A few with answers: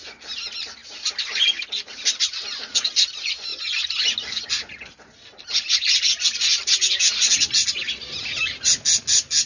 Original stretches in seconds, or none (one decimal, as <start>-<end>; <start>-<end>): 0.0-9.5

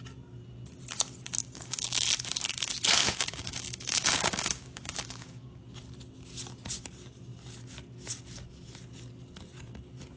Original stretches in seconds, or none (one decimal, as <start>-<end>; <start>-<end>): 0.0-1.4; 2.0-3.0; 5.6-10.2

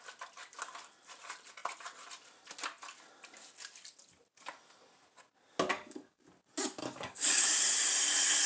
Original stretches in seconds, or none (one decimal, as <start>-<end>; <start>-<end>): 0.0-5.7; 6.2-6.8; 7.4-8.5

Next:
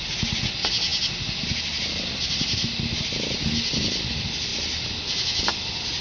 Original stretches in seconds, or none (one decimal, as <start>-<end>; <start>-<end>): 0.0-6.0

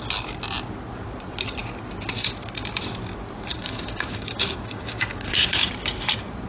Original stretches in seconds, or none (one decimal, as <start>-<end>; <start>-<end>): 0.0-3.5; 5.7-6.5

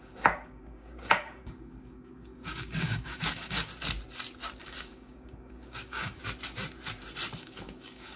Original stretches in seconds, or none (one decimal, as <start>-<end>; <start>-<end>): 3.7-4.6; 6.2-7.4